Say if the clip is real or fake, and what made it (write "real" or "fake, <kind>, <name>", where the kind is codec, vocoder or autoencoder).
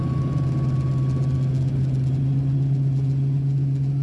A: real